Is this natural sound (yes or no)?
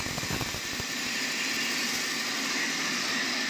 yes